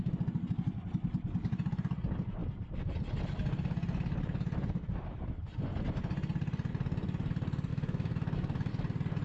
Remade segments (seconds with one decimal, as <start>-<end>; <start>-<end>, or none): 7.7-8.7